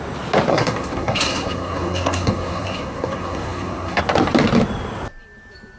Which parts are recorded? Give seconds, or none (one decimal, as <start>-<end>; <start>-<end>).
0.0-0.5; 4.0-5.8